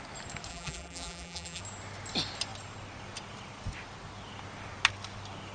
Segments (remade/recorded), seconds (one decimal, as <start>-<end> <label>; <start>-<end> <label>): 0.0-0.5 recorded; 0.5-1.6 remade; 1.6-5.5 recorded